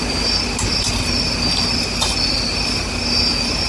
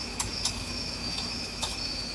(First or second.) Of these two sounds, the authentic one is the first